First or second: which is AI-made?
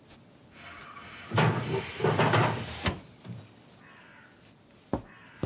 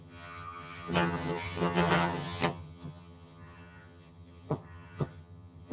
second